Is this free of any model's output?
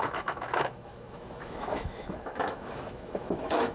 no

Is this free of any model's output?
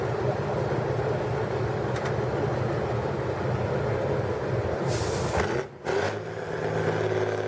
yes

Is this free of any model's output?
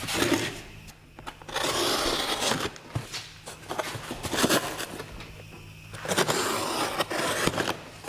yes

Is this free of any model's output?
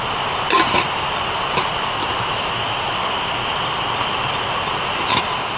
yes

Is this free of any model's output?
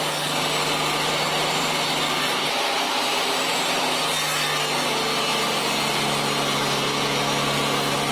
yes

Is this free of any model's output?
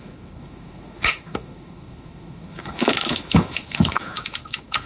no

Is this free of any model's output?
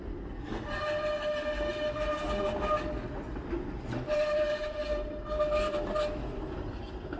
yes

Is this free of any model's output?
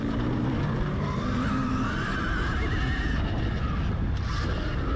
yes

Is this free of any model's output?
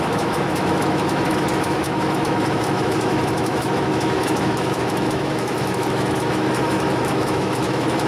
no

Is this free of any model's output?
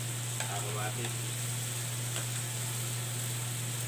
yes